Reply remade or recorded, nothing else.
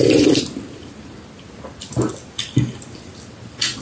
recorded